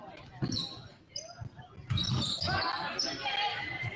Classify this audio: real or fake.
real